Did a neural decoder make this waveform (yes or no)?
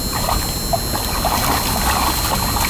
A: no